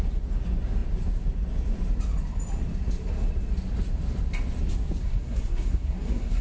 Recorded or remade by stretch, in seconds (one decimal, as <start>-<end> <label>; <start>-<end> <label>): 0.0-5.0 recorded; 5.0-6.4 remade